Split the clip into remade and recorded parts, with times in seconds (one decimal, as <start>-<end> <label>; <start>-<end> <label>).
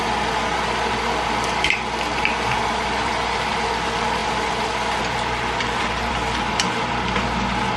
0.0-7.8 recorded